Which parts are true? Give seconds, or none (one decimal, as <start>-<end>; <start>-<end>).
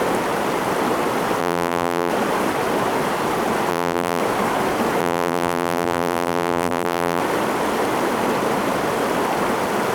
0.0-1.4; 2.1-3.7; 4.2-5.0; 7.2-9.9